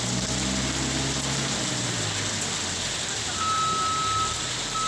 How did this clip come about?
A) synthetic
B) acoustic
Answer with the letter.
B